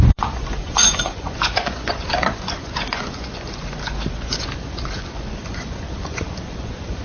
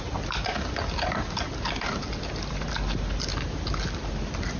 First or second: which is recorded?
second